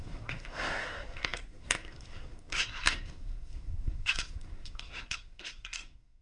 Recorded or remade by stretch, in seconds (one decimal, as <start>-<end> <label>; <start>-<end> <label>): 0.0-6.2 remade